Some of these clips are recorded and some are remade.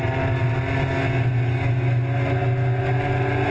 recorded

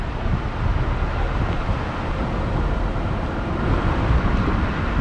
recorded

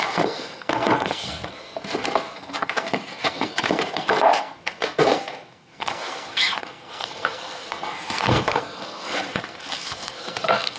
remade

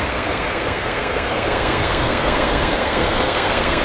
remade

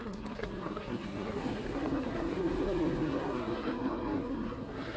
remade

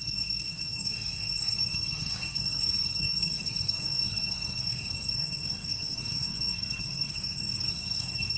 remade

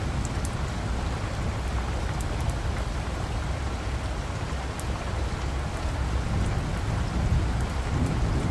recorded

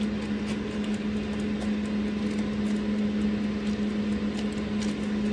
recorded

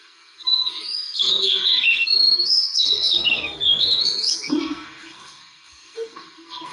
remade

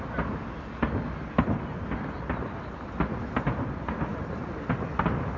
recorded